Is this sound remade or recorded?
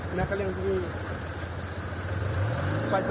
recorded